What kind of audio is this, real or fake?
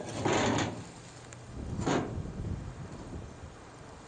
real